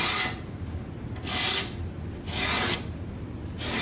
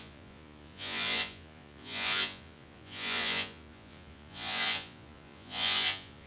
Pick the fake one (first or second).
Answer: second